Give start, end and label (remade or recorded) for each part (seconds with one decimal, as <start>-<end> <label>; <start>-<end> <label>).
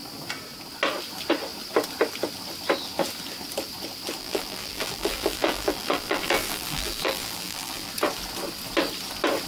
0.0-4.2 recorded; 4.2-7.9 remade; 7.9-9.5 recorded